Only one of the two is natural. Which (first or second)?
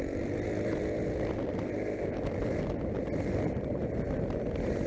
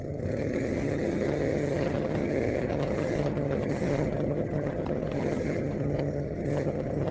first